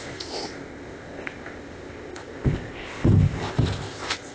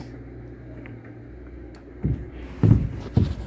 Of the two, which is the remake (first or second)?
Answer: first